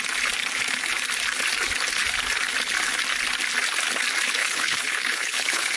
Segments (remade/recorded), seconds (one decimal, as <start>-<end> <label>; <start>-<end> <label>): 0.0-4.4 recorded; 4.4-5.8 remade